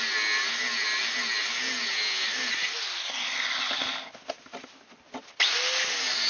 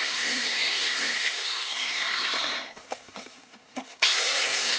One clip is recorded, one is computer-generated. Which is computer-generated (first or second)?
second